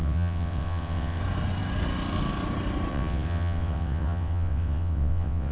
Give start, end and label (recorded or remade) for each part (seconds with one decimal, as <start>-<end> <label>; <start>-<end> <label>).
0.0-1.2 remade; 1.2-2.9 recorded; 2.9-5.5 remade